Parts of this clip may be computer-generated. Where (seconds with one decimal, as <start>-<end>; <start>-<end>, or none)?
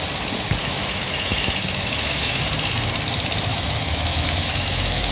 0.6-2.5; 3.5-5.1